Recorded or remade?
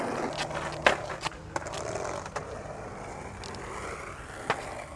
recorded